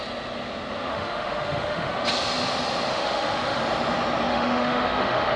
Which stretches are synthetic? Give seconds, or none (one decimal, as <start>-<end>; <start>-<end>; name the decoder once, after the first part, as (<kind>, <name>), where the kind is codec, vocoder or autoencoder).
0.9-1.9 (autoencoder, DAC-VAE); 2.9-3.6; 4.3-5.4